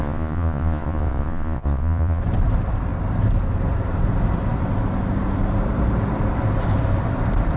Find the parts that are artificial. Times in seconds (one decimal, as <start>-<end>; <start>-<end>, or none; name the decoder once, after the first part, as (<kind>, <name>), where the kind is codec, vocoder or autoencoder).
0.0-2.2 (vocoder, Vocos)